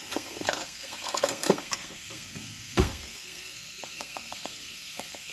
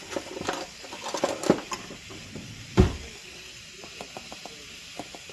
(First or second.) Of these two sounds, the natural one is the second